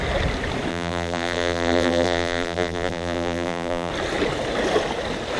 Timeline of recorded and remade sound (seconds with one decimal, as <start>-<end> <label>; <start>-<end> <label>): 0.0-0.7 recorded; 0.7-3.9 remade; 3.9-5.4 recorded